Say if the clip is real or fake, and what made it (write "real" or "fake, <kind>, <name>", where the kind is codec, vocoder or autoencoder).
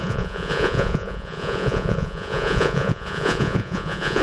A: fake, vocoder, Vocos